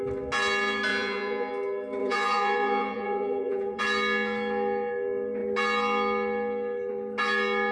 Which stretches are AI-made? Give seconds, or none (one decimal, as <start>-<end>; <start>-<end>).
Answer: 0.9-1.5; 2.0-3.8